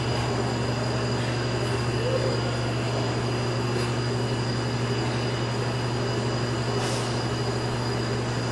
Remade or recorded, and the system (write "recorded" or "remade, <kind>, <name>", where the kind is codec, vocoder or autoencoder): recorded